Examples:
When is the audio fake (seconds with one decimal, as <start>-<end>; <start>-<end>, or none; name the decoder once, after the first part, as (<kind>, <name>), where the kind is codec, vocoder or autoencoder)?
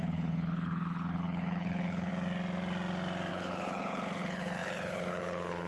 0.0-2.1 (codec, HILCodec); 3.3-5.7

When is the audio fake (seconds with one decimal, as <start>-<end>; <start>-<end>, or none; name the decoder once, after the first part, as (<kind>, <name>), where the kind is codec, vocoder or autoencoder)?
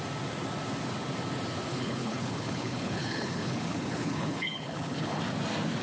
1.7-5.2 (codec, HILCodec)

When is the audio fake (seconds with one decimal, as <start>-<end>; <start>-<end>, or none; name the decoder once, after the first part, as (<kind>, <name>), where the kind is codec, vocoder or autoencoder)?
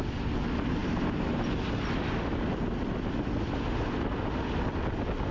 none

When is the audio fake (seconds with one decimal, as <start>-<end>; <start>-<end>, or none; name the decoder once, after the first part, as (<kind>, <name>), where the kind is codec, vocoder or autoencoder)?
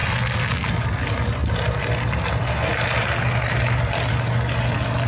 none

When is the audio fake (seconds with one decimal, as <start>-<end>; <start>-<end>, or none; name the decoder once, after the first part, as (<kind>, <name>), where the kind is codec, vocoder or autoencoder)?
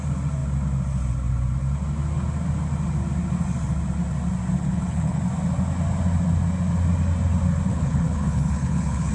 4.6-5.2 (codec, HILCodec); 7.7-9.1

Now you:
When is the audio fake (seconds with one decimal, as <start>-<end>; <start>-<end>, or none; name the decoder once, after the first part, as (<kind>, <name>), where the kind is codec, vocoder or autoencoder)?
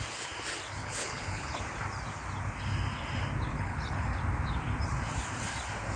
0.8-1.6 (codec, HILCodec); 3.5-4.2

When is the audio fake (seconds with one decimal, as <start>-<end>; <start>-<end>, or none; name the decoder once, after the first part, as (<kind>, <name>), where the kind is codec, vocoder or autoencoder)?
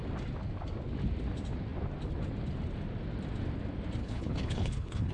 4.0-5.1 (codec, HILCodec)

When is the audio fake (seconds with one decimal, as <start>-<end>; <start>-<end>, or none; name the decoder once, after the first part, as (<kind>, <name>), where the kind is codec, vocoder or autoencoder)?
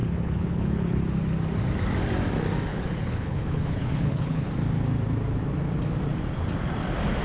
0.0-1.0 (codec, HILCodec); 2.7-4.5